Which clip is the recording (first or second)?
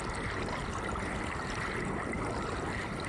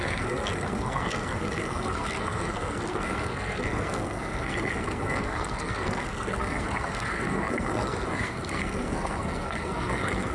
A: first